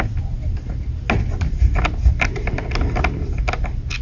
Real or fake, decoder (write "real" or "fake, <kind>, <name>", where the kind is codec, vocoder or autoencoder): real